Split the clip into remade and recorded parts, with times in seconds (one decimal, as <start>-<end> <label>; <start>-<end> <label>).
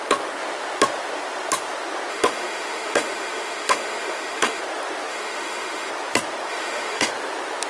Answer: 0.0-2.1 recorded; 2.1-4.6 remade; 4.6-5.1 recorded; 5.1-5.9 remade; 5.9-6.5 recorded; 6.5-7.1 remade; 7.1-7.7 recorded